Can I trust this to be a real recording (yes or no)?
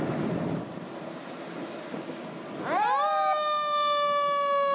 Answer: yes